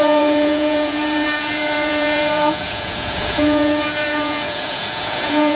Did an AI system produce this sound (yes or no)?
yes